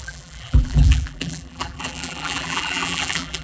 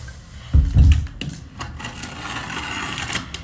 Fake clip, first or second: first